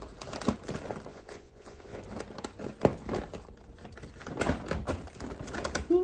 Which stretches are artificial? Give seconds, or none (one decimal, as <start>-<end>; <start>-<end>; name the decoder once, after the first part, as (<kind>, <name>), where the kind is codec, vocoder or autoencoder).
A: 1.1-2.0 (vocoder, Vocos)